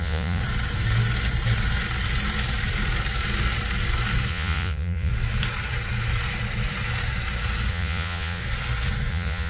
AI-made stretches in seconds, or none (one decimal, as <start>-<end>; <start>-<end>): 0.0-0.4; 4.3-5.1; 7.7-8.4; 9.1-9.5